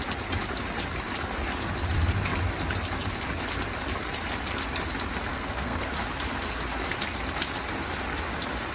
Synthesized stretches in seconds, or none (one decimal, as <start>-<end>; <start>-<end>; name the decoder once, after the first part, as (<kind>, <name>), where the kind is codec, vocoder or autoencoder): 5.3-5.9 (codec, SNAC)